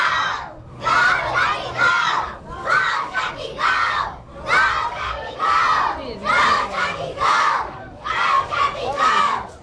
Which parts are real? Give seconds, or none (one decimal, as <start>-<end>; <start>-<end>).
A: 0.9-1.7; 4.3-4.9; 5.6-6.5